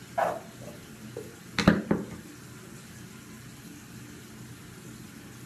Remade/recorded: recorded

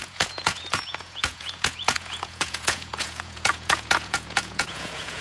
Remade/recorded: remade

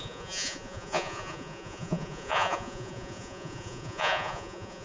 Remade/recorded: remade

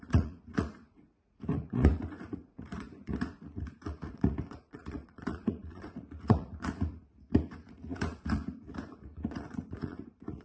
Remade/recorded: remade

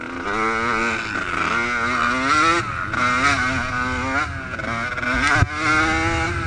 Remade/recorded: recorded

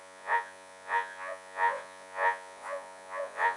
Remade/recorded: remade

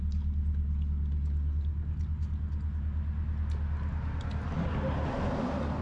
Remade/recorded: recorded